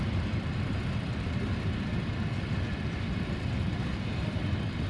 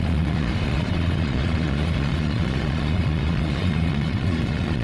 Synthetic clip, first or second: second